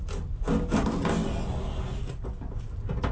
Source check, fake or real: real